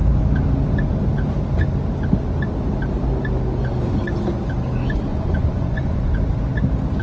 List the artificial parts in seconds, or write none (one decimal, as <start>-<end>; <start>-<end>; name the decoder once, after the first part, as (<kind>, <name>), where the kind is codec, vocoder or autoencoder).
5.1-6.1 (vocoder, Vocos)